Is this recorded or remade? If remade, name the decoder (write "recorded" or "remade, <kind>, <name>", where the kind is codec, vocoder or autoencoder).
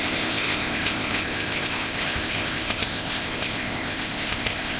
remade, codec, ZipCodec